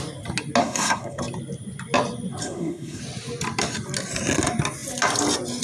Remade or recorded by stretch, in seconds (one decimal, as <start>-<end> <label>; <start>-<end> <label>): 0.0-0.6 recorded; 0.6-1.2 remade; 1.2-2.4 recorded; 2.4-3.0 remade; 3.0-5.6 recorded